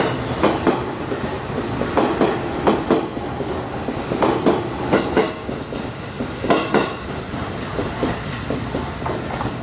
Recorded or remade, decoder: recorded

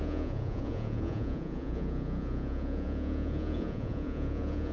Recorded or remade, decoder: remade, vocoder, Vocos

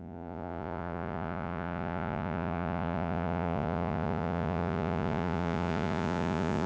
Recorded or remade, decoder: remade, vocoder, Vocos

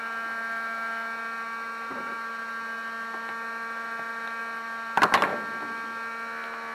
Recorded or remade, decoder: recorded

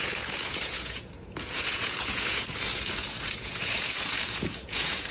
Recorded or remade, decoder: remade, vocoder, Vocos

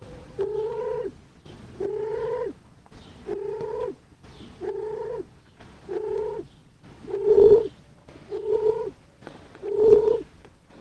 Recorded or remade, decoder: remade, vocoder, Vocos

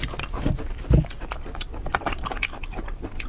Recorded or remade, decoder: recorded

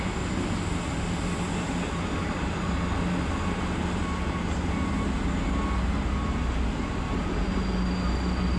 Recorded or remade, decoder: recorded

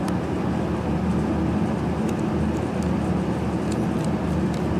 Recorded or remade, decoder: recorded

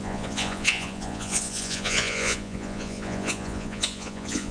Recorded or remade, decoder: remade, vocoder, Vocos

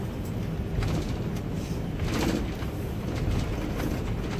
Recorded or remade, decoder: recorded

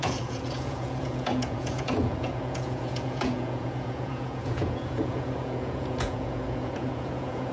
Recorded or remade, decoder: remade, vocoder, Vocos